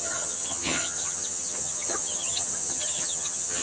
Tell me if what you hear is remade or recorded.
remade